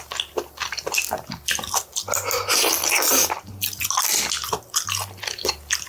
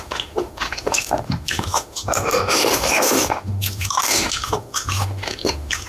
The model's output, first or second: second